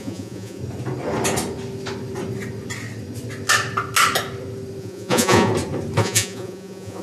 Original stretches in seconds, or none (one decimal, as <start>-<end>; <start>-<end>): 0.6-4.8; 5.5-6.0